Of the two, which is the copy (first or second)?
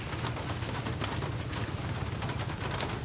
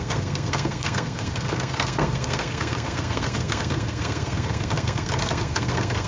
second